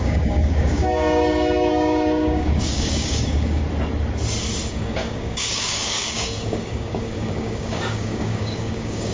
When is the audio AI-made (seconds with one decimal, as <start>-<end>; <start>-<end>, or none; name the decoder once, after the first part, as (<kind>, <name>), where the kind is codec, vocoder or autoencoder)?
0.0-3.6 (codec, DAC); 4.7-9.1